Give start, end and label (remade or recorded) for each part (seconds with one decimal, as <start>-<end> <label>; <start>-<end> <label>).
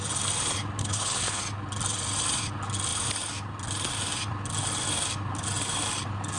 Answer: 0.0-0.8 recorded; 0.8-1.4 remade; 1.4-6.4 recorded